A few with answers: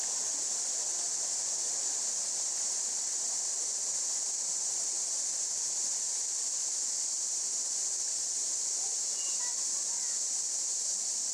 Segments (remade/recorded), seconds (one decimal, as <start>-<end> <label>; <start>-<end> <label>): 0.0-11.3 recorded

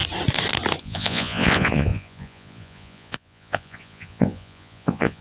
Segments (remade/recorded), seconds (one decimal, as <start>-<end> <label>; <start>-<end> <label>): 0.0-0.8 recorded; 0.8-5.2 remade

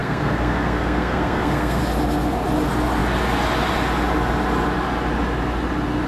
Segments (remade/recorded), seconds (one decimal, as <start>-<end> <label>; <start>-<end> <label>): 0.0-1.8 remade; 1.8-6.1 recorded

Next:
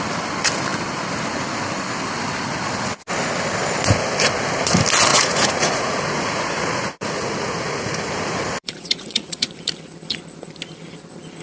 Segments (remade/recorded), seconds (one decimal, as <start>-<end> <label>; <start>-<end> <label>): 0.0-5.1 recorded; 5.1-9.5 remade; 9.5-11.4 recorded